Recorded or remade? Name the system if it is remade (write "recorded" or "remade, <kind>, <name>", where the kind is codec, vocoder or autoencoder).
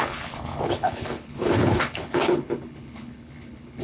remade, codec, HILCodec